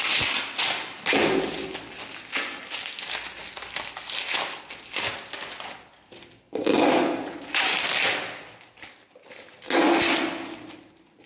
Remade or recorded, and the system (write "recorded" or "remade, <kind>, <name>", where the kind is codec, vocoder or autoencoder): recorded